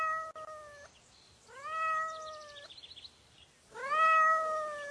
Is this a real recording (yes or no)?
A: yes